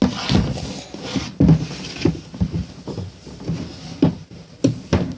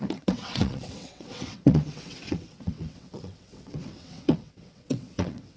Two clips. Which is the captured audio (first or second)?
first